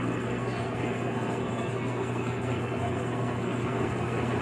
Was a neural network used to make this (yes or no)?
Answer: yes